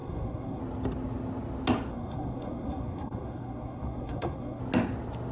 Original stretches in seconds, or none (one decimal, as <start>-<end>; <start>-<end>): 0.6-1.9; 4.6-5.3